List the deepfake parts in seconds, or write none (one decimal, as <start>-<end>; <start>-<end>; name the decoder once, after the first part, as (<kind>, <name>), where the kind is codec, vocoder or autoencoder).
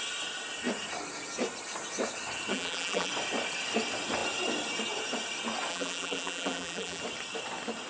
2.5-3.1 (vocoder, BigVGAN v2); 5.7-7.0